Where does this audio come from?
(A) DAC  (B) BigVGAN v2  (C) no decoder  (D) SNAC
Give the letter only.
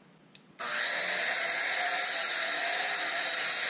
C